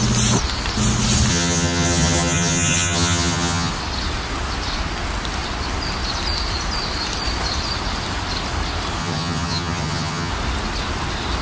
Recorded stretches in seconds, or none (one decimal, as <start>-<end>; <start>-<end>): 0.0-1.3; 3.7-9.0; 10.3-11.4